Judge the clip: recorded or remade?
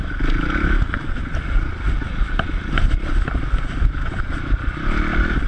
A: recorded